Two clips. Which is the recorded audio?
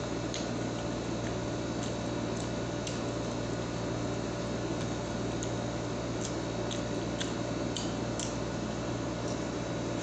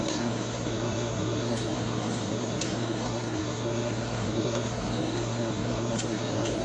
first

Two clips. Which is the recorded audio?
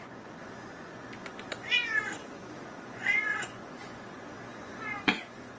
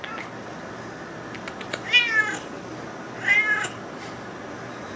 second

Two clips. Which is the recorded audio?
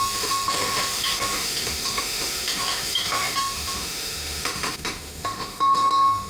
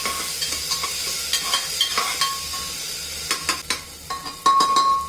second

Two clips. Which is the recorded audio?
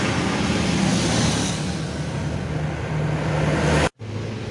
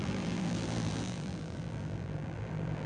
first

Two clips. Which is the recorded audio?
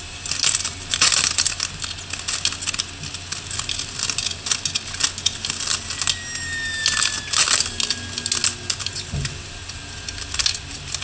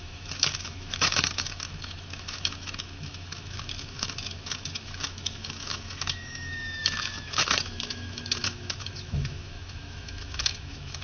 first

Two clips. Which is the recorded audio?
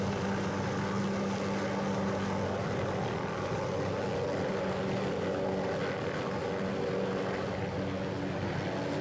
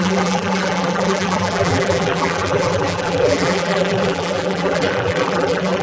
first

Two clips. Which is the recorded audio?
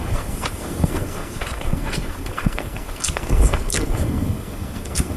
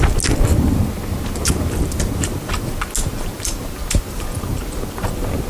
second